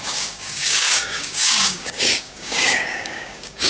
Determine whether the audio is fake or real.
fake